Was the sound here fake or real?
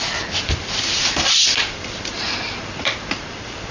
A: fake